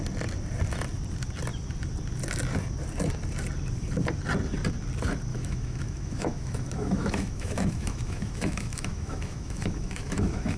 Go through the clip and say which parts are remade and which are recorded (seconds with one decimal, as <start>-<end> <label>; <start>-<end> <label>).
0.0-5.3 recorded; 5.3-10.6 remade

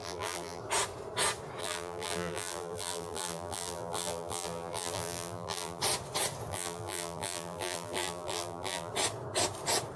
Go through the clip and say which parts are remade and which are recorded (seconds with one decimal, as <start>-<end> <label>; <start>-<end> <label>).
0.0-0.6 remade; 0.6-1.6 recorded; 1.6-5.8 remade; 5.8-6.5 recorded; 6.5-8.9 remade; 8.9-10.0 recorded

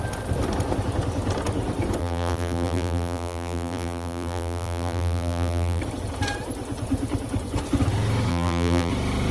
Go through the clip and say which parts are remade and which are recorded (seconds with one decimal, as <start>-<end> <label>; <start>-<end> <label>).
0.0-2.0 recorded; 2.0-5.8 remade; 5.8-8.3 recorded; 8.3-8.9 remade; 8.9-9.3 recorded

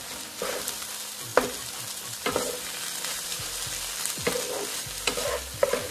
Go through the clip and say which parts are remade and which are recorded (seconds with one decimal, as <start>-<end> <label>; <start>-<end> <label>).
0.0-5.9 recorded

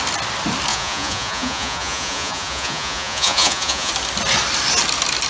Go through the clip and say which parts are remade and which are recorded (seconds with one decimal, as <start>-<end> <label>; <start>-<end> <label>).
0.0-0.7 recorded; 0.7-3.9 remade; 3.9-5.3 recorded

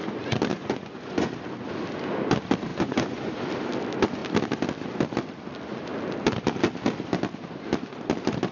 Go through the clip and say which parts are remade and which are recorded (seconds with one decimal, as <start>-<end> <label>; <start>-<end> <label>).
0.0-0.5 recorded; 0.5-1.3 remade; 1.3-2.7 recorded; 2.7-3.3 remade; 3.3-8.5 recorded

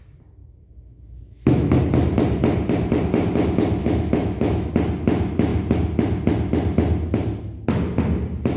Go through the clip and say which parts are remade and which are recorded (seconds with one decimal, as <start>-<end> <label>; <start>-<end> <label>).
0.0-0.4 recorded; 0.4-1.8 remade; 1.8-3.8 recorded; 3.8-4.7 remade; 4.7-8.6 recorded

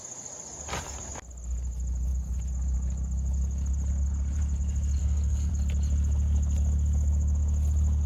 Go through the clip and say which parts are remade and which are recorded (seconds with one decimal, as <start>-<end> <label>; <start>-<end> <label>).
0.0-5.0 recorded; 5.0-5.5 remade; 5.5-8.1 recorded